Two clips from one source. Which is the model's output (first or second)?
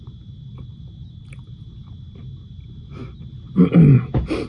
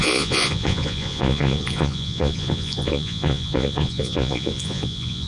second